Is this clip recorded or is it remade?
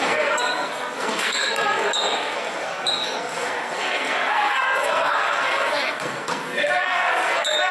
remade